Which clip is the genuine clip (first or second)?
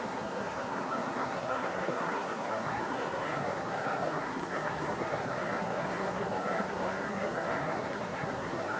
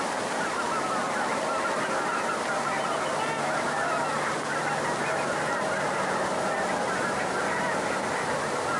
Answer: second